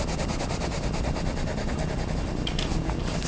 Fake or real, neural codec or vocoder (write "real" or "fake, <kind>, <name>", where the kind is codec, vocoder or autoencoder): real